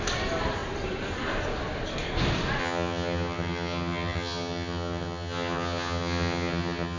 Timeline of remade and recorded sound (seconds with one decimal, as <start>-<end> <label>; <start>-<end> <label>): 0.0-2.6 recorded; 2.6-7.0 remade